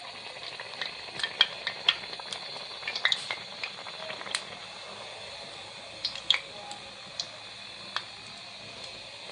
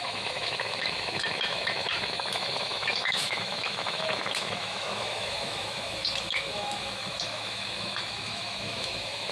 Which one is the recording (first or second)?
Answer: first